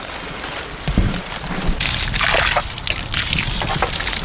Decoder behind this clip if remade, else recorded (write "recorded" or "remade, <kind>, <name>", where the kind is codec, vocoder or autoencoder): recorded